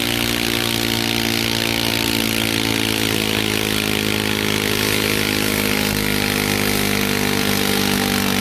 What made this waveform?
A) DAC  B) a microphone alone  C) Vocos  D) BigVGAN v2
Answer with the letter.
B